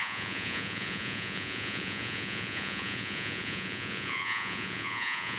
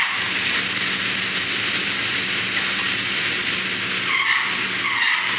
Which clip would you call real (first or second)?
second